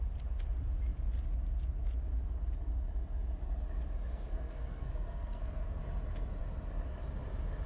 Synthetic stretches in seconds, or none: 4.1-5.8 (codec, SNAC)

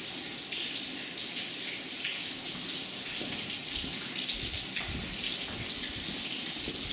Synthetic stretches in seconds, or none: none

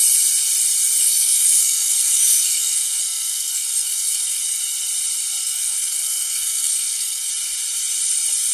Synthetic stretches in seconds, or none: 1.0-4.6 (codec, SNAC); 5.4-7.3